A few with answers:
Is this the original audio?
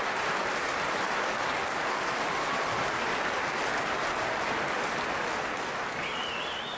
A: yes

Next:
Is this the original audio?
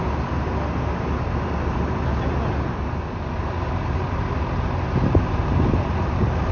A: yes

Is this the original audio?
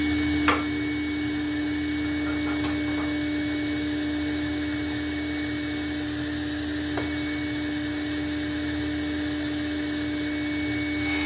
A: yes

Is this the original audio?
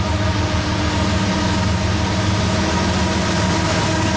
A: yes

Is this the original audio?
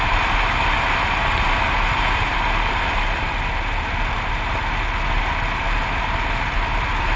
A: yes